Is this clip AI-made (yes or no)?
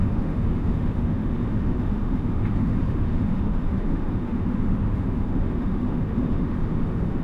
yes